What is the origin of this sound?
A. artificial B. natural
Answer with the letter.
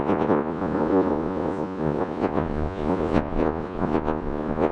A